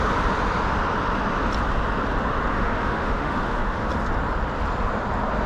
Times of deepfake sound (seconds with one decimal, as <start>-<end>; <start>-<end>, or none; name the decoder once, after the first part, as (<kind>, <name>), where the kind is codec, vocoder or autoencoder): 2.5-3.9 (autoencoder, DAC-VAE)

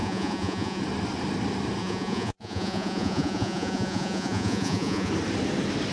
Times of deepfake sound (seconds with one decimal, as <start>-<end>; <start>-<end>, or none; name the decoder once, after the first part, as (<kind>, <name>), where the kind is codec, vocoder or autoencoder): 0.0-0.8 (vocoder, Vocos); 1.8-5.1